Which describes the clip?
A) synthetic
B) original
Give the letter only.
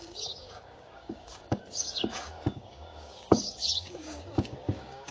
A